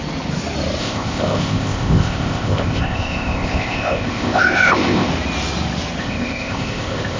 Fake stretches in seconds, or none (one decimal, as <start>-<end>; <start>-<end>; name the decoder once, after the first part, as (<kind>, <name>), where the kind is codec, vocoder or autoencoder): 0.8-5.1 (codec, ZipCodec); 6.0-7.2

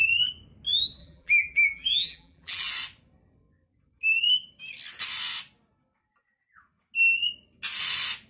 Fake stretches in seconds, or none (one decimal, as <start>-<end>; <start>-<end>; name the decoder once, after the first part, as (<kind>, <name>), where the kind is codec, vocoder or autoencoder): 1.0-2.7 (vocoder, BigVGAN v2)

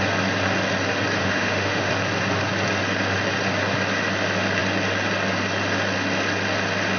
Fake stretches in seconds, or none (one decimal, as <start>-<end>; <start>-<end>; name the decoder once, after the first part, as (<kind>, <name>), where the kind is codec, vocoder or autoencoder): 1.2-1.9 (autoencoder, DAC-VAE)

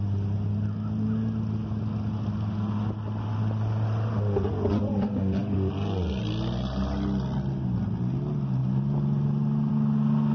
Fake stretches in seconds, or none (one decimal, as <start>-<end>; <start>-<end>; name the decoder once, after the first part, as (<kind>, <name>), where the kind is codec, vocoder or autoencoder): none

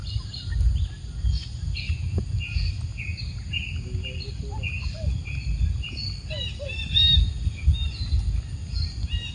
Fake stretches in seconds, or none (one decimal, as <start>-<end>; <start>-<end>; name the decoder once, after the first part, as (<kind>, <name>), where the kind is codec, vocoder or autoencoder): none

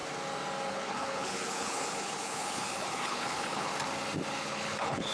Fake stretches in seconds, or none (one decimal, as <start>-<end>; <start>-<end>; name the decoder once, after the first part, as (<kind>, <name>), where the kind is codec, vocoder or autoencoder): 0.7-3.7 (codec, HILCodec); 4.3-5.1

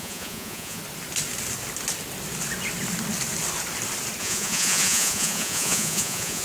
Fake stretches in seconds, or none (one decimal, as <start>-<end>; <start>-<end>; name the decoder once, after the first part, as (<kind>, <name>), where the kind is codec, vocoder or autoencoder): 0.0-0.8 (vocoder, Vocos); 4.2-6.4